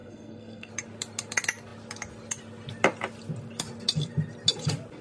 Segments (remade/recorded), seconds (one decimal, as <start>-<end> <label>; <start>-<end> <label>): 0.0-0.7 remade; 0.7-5.0 recorded